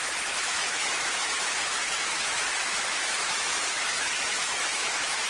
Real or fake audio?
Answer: fake